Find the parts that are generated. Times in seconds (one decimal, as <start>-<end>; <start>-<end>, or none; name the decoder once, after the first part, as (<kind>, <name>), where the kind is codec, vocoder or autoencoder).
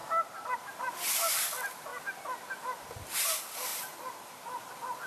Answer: 0.6-5.1 (vocoder, BigVGAN v2)